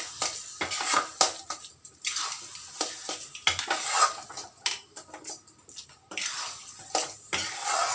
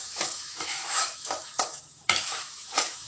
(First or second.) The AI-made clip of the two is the second